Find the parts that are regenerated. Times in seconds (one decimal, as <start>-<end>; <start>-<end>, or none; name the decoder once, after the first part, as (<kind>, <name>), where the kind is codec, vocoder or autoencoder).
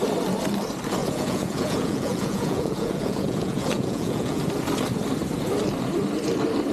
1.0-4.5 (vocoder, Vocos)